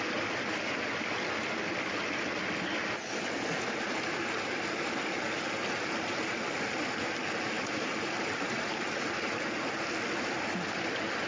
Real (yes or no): yes